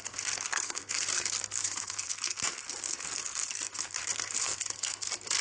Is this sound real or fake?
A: fake